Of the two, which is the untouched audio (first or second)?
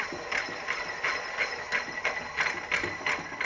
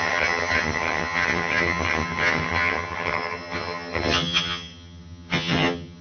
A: first